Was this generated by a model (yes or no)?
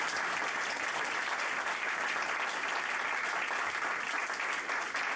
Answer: no